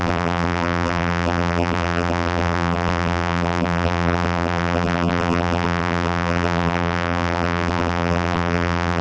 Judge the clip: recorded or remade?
remade